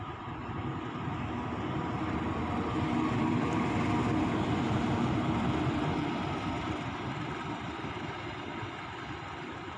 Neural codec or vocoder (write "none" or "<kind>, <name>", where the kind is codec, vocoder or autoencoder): vocoder, BigVGAN v2